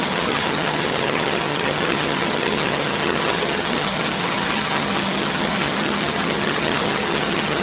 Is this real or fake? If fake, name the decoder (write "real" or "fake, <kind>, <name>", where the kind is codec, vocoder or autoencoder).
fake, vocoder, HiFi-GAN